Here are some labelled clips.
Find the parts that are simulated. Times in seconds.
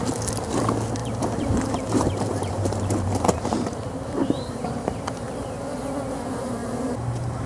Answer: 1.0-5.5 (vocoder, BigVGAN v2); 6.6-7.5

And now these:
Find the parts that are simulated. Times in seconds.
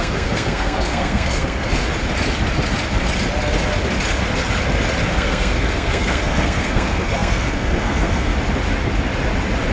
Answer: 0.0-1.8 (codec, SNAC); 5.1-8.3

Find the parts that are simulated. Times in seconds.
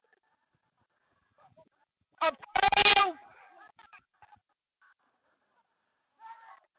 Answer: 1.0-4.4 (vocoder, BigVGAN v2)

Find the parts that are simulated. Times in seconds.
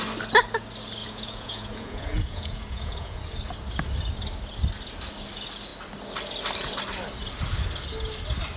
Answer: 1.0-3.2 (vocoder, Vocos)